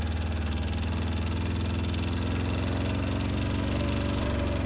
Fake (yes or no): no